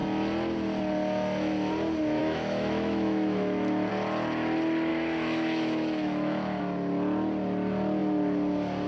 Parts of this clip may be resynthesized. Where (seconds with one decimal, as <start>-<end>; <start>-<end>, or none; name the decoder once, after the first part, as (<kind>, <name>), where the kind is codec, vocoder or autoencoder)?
2.2-3.9 (autoencoder, DAC-VAE); 4.9-6.6